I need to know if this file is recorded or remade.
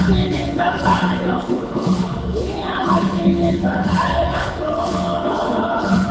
remade